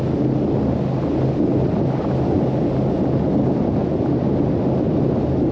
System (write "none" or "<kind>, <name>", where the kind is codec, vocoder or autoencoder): none